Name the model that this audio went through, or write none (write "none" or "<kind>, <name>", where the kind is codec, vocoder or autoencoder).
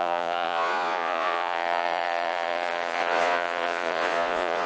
vocoder, Vocos